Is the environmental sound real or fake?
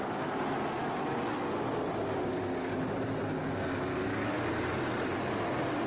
real